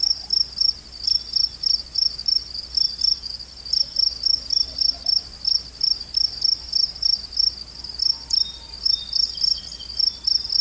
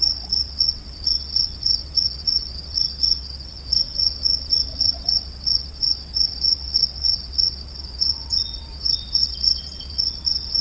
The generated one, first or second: second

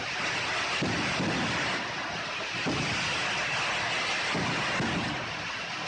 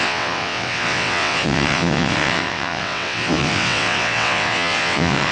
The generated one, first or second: second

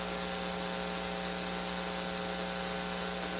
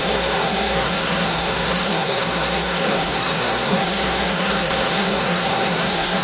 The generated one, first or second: second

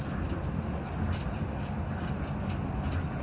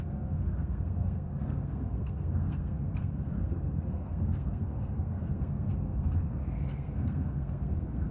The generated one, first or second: second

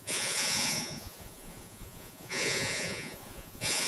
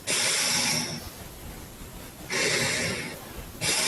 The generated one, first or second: first